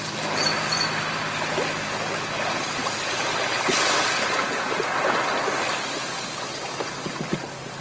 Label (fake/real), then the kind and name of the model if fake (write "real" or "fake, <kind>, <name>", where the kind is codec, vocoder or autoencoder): real